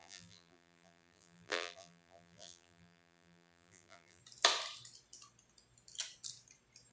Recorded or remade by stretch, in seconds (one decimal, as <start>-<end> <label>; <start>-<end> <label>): 0.0-4.2 remade; 4.2-6.9 recorded